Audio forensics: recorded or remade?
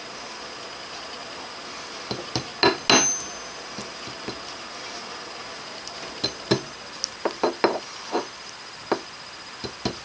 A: recorded